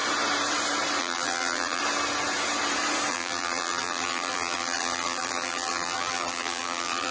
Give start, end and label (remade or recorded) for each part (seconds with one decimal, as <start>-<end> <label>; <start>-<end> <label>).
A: 0.0-1.0 recorded; 1.0-1.8 remade; 1.8-3.1 recorded; 3.1-7.1 remade